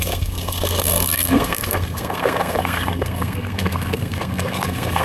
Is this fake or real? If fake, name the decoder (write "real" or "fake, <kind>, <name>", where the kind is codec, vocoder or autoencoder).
fake, codec, SNAC